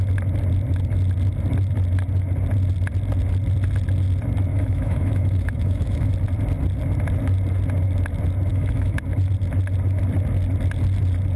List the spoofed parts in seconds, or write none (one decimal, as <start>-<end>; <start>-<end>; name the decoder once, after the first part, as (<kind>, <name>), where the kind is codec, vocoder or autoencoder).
4.5-6.1 (autoencoder, DAC-VAE); 8.5-9.0